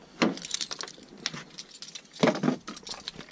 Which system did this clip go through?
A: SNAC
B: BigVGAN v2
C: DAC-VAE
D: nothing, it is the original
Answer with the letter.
D